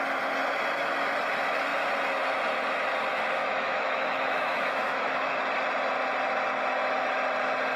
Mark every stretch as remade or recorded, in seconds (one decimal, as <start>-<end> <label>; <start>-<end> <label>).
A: 0.0-3.4 recorded; 3.4-5.4 remade; 5.4-7.8 recorded